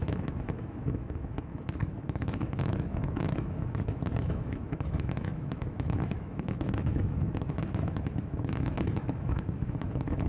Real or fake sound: fake